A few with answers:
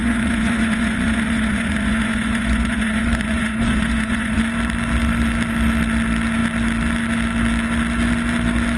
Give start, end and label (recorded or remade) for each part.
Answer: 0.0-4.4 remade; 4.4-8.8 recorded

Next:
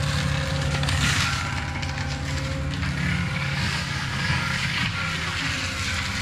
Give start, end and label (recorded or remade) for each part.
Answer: 0.0-0.5 recorded; 0.5-1.4 remade; 1.4-3.2 recorded; 3.2-4.8 remade; 4.8-6.2 recorded